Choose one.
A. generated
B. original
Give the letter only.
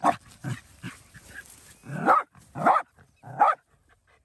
B